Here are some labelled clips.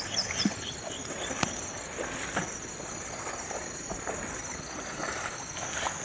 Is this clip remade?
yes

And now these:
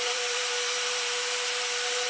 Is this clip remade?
yes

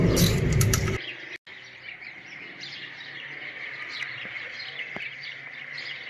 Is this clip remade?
no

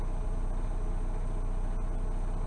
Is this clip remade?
no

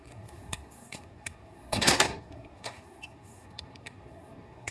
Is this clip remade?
yes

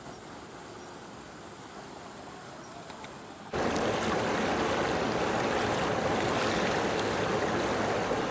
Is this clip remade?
no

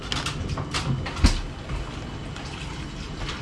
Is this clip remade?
no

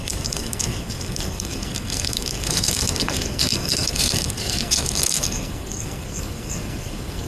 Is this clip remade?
yes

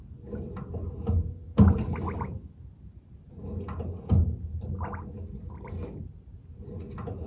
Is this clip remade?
no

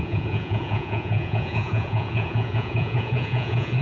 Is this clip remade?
yes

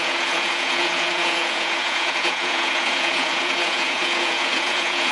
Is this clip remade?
yes